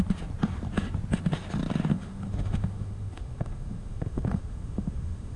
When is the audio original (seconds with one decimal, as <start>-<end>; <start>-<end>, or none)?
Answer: 0.0-1.9